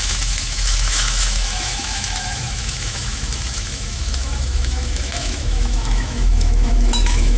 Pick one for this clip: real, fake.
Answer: fake